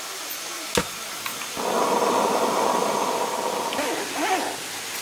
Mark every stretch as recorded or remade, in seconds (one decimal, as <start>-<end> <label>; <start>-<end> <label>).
0.0-5.0 recorded